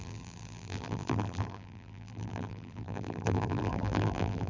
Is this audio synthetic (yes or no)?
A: yes